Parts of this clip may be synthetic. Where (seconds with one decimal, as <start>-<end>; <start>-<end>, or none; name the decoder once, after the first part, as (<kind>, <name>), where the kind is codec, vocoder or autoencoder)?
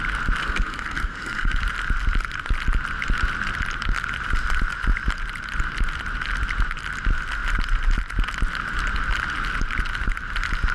0.4-1.6 (codec, SNAC)